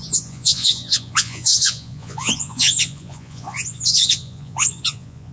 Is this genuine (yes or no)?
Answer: no